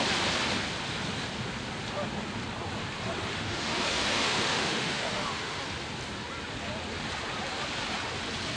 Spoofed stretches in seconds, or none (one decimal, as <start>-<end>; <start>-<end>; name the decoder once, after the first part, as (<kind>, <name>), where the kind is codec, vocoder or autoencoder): 3.3-5.6 (autoencoder, DAC-VAE)